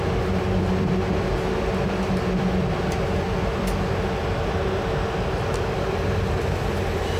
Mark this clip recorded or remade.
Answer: recorded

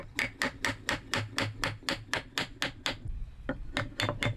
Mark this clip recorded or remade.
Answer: recorded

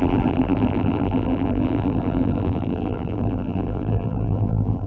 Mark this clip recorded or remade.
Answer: remade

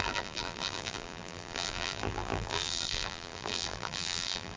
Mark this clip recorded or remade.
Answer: remade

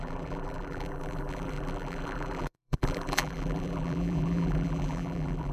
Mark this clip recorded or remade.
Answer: remade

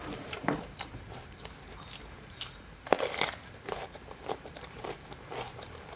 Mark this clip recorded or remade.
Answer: remade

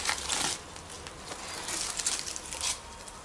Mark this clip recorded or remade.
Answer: recorded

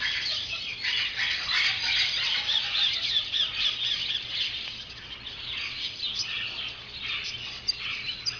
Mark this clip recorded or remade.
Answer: recorded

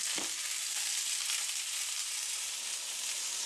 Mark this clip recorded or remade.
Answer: recorded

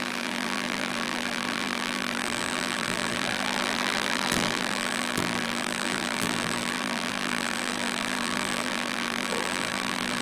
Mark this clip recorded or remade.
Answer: remade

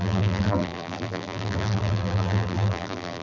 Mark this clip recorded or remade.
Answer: remade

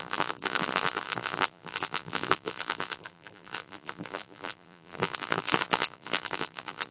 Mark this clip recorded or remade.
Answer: remade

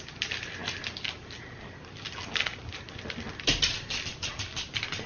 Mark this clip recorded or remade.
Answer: recorded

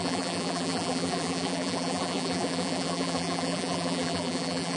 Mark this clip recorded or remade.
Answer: remade